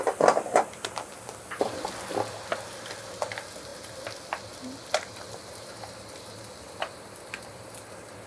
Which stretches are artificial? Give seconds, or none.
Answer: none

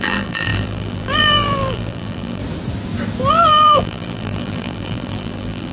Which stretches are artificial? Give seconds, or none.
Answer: 0.0-2.4 (vocoder, BigVGAN v2); 3.3-5.7